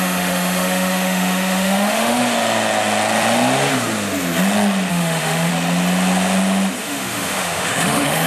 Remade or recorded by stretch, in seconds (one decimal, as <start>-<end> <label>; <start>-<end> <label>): 0.0-2.2 remade; 2.2-4.9 recorded; 4.9-5.5 remade; 5.5-6.8 recorded; 6.8-8.3 remade